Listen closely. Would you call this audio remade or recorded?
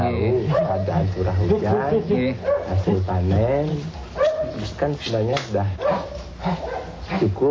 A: recorded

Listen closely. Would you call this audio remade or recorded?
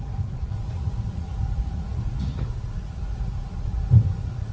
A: remade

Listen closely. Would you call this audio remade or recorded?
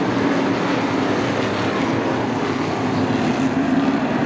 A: recorded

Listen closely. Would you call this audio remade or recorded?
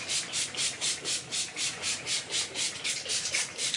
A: remade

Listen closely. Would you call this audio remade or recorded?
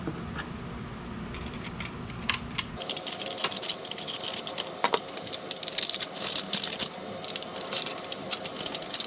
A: recorded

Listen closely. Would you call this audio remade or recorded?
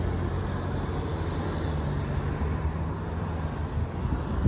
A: recorded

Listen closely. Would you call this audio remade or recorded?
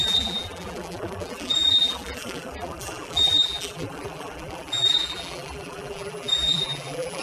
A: remade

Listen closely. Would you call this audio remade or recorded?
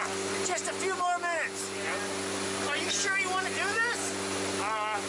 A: recorded